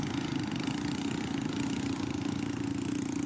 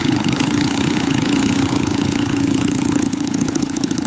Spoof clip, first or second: second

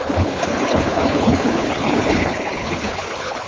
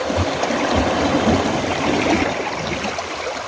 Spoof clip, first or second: first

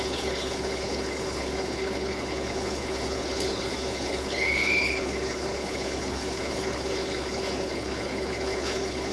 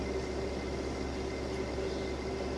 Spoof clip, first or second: first